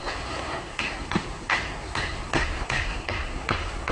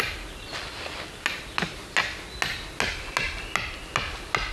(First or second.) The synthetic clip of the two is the first